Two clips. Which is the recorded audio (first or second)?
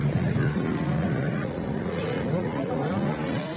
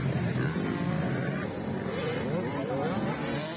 second